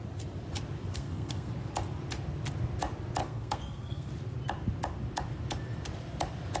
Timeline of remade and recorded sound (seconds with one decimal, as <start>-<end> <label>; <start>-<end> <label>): 0.0-0.9 recorded; 0.9-1.5 remade; 1.5-3.2 recorded; 3.2-4.1 remade; 4.1-6.6 recorded